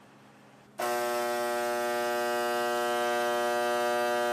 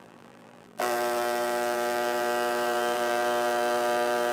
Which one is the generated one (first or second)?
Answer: second